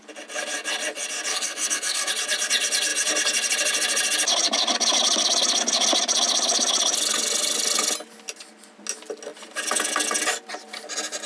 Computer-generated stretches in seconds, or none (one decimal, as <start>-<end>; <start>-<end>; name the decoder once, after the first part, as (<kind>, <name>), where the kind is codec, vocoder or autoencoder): 1.3-2.1 (codec, SNAC)